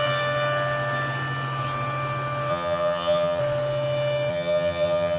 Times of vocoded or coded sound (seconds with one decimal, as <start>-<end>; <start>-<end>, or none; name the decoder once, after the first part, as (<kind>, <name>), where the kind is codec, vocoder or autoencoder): 2.5-3.4 (vocoder, HiFi-GAN); 4.3-5.2